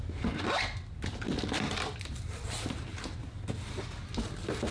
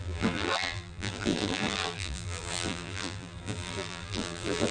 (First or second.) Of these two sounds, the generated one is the second